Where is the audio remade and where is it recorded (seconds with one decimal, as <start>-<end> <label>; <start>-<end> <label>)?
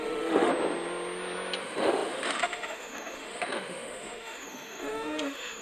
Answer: 0.0-0.5 remade; 0.5-1.6 recorded; 1.6-5.6 remade